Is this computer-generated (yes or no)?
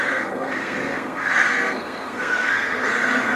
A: yes